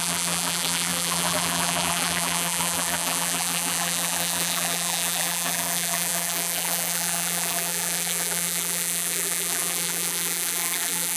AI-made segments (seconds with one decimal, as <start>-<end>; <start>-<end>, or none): 0.0-11.2